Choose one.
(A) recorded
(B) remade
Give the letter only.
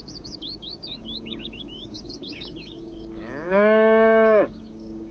B